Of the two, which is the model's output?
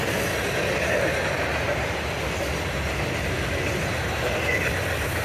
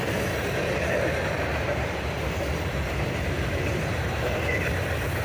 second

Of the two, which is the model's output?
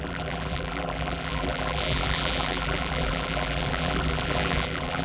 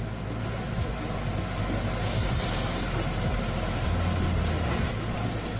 first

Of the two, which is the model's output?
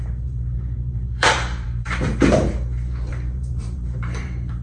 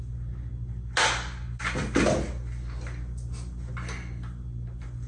first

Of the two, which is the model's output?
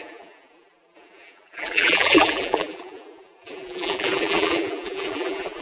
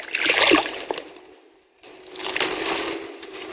first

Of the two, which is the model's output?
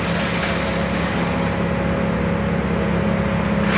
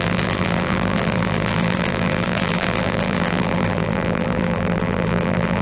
second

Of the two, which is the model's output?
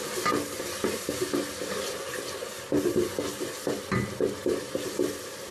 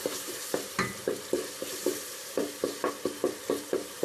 second